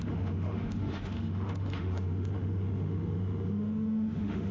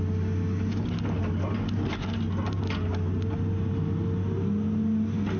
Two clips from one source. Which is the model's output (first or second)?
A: first